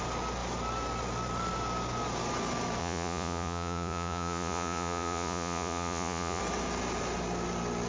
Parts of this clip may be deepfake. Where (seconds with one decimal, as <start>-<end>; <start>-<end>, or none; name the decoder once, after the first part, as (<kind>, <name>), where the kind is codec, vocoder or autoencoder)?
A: 2.8-6.4 (vocoder, Vocos)